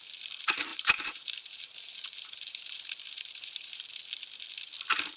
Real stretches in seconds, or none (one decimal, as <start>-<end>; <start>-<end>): 0.0-0.7; 3.8-5.2